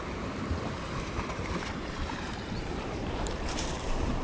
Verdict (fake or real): fake